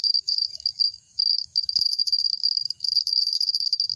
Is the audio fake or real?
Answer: fake